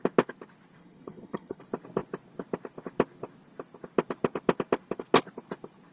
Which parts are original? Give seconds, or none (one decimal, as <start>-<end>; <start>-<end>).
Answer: 0.0-0.8; 1.6-5.9